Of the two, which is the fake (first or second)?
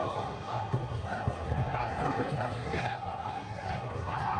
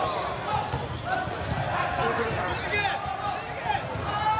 first